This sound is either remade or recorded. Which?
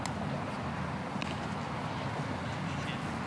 recorded